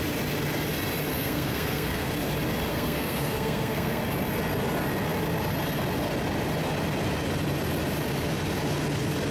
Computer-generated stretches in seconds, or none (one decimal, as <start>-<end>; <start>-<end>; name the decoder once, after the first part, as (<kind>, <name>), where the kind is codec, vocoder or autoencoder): 1.1-2.1 (codec, SNAC); 2.7-4.0

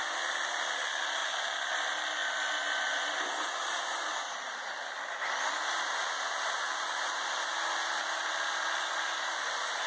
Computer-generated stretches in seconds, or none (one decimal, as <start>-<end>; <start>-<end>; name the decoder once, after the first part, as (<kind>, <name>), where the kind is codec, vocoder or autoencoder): none

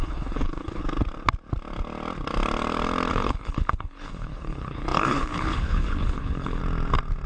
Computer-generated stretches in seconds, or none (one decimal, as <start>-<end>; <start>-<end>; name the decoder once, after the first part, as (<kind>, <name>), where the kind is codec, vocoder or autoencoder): 0.0-0.8 (codec, HILCodec); 3.1-6.6

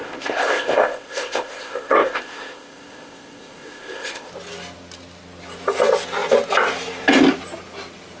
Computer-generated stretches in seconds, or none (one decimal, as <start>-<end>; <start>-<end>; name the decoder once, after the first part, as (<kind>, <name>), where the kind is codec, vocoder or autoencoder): 0.0-4.3 (codec, ZipCodec)